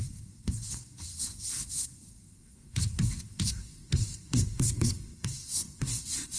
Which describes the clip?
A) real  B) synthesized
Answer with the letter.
B